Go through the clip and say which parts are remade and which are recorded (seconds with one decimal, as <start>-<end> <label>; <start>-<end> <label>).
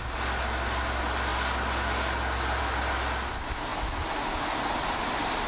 0.0-5.5 recorded